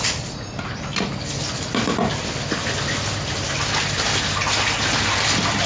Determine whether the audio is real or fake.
real